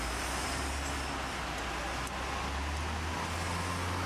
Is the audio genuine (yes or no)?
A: yes